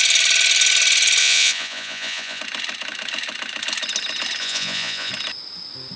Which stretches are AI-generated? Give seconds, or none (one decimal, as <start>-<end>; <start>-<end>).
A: 1.2-2.4; 4.4-5.1